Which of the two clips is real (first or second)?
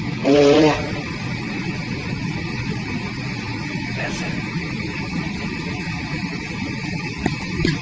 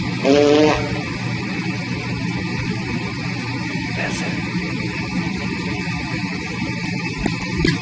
second